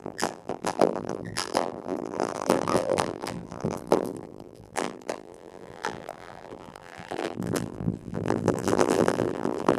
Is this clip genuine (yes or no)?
no